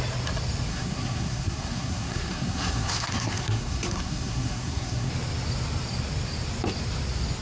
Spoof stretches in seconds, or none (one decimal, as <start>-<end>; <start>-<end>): 0.7-5.1